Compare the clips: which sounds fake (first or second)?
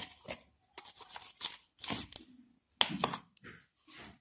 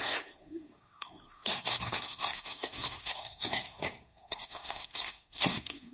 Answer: second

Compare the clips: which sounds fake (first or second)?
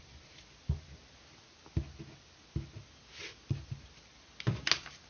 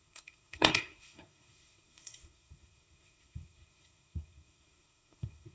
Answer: second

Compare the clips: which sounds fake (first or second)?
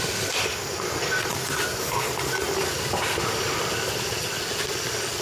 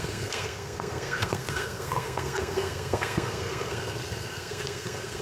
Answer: second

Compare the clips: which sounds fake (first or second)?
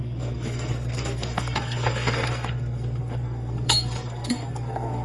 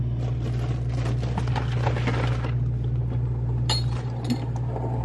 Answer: first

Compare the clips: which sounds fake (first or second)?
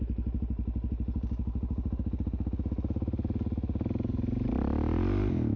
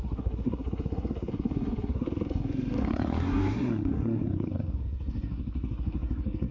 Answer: second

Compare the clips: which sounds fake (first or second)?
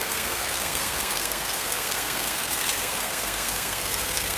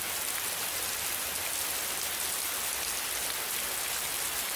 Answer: first